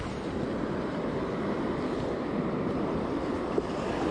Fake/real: real